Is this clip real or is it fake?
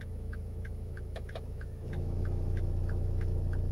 fake